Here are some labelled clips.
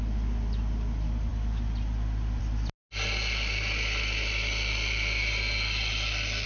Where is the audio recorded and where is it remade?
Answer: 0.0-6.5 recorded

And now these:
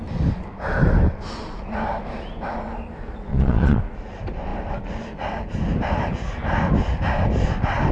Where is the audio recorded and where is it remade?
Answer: 0.0-3.3 recorded; 3.3-3.8 remade; 3.8-7.9 recorded

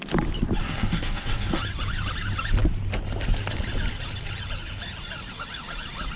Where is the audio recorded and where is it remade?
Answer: 0.0-0.6 recorded; 0.6-1.6 remade; 1.6-6.2 recorded

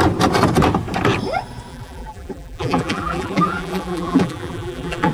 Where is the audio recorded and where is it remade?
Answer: 0.0-1.7 recorded; 1.7-5.1 remade

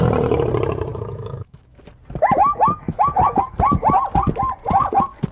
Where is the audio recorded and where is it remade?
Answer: 0.0-0.9 recorded; 0.9-1.8 remade; 1.8-2.4 recorded; 2.4-3.4 remade; 3.4-5.3 recorded